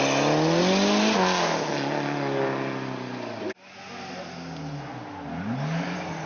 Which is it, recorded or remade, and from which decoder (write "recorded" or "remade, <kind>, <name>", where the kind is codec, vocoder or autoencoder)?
recorded